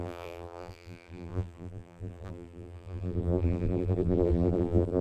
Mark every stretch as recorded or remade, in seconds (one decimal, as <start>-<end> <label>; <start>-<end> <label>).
0.0-5.0 remade